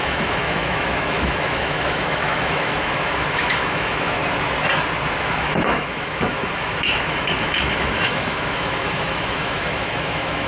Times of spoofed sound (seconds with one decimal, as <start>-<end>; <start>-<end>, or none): 0.0-4.2; 5.2-10.5